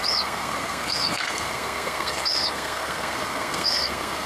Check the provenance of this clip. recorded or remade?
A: remade